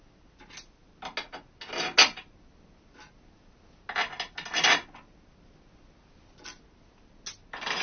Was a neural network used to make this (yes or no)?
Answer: no